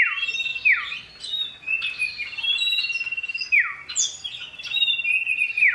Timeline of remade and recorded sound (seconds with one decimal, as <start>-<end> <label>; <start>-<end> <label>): 0.0-5.7 recorded